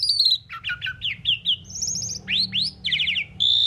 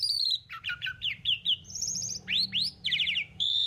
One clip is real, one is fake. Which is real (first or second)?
first